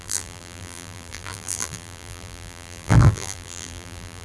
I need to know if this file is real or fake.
fake